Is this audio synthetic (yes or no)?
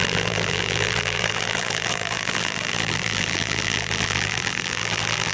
yes